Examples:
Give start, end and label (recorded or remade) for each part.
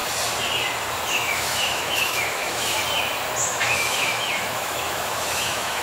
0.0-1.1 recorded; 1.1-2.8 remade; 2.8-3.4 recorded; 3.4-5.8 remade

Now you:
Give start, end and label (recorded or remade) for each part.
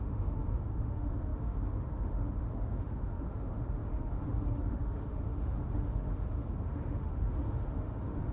0.0-8.3 remade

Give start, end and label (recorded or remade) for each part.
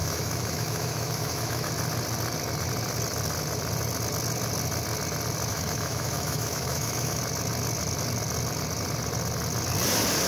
0.0-1.7 remade; 1.7-5.5 recorded; 5.5-7.2 remade; 7.2-10.3 recorded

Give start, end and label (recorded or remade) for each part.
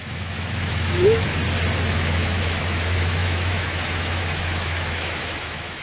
0.0-1.4 remade; 1.4-1.9 recorded; 1.9-5.8 remade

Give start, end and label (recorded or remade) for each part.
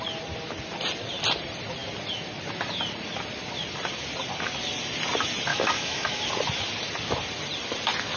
0.0-5.5 recorded; 5.5-6.2 remade; 6.2-8.2 recorded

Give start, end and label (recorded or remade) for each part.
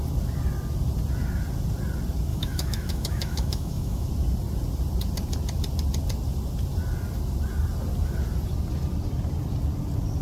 0.0-2.3 recorded; 2.3-4.1 remade; 4.1-10.2 recorded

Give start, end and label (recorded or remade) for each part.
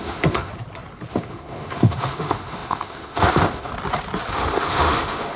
0.0-0.5 remade; 0.5-1.1 recorded; 1.1-3.7 remade; 3.7-4.3 recorded; 4.3-5.4 remade